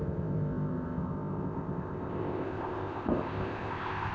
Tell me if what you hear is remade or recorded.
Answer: remade